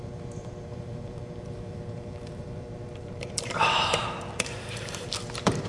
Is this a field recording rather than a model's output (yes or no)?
no